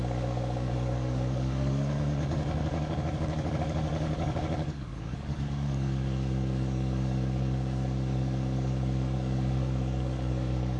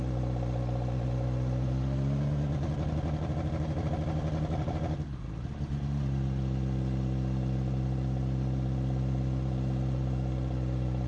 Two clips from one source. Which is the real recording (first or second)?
second